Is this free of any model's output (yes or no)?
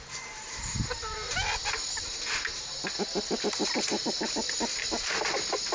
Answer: yes